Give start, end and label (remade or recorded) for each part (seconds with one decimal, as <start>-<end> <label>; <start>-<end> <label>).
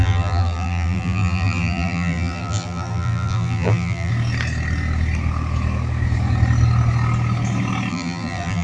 0.0-4.1 remade; 4.1-7.9 recorded; 7.9-8.6 remade